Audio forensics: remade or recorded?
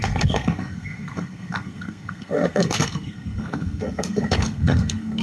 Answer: remade